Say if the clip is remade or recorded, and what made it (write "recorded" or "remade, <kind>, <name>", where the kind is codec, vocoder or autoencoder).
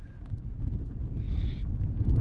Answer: remade, vocoder, BigVGAN v2